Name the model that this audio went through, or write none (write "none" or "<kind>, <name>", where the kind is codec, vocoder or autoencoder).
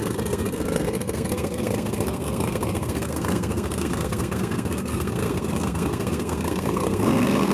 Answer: codec, SNAC